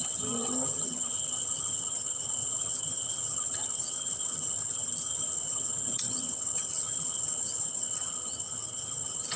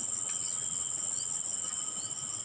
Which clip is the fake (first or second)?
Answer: first